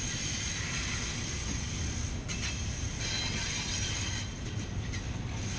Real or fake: real